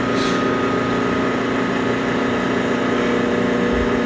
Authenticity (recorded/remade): recorded